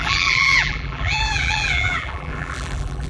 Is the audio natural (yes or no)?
no